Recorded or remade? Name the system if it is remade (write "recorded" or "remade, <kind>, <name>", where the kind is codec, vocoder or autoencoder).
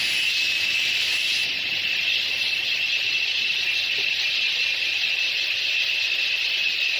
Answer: recorded